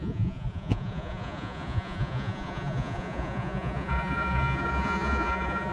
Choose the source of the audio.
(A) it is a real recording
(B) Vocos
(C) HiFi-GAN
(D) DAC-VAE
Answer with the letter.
B